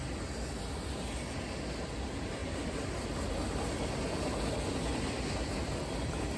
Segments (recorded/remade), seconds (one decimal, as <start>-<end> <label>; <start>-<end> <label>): 0.0-6.4 recorded